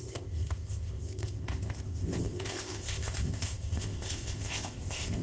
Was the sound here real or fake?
fake